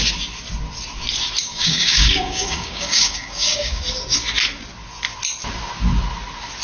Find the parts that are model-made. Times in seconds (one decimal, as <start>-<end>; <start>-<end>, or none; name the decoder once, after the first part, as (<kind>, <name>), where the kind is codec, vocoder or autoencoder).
1.4-3.8 (codec, DAC)